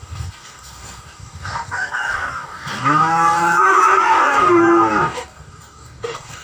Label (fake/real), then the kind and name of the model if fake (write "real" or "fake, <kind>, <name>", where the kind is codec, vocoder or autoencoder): fake, codec, DAC